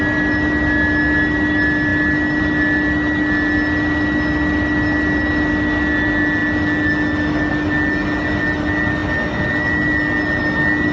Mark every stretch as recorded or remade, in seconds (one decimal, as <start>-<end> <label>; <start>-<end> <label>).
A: 0.0-10.9 recorded

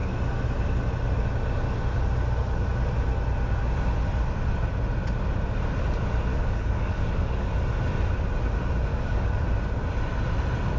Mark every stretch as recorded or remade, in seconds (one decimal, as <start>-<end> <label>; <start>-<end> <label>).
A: 0.0-6.3 recorded; 6.3-7.5 remade; 7.5-8.9 recorded; 8.9-9.4 remade; 9.4-10.8 recorded

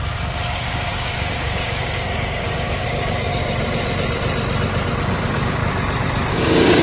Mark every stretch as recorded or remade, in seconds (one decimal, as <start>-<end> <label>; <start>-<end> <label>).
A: 0.0-3.4 remade; 3.4-5.0 recorded; 5.0-5.6 remade; 5.6-6.3 recorded; 6.3-6.8 remade

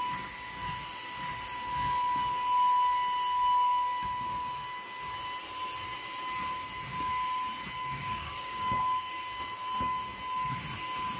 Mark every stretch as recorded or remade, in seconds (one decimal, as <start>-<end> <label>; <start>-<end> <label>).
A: 0.0-7.9 recorded; 7.9-9.2 remade; 9.2-11.2 recorded

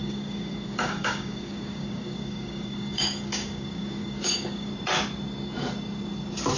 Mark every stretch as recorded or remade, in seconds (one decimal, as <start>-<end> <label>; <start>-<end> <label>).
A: 0.0-4.7 remade; 4.7-6.6 recorded

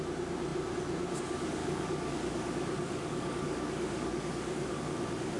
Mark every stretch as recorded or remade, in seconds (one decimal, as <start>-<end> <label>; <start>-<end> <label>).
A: 0.0-1.6 recorded; 1.6-4.8 remade; 4.8-5.4 recorded